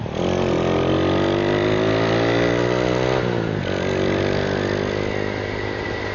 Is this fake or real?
real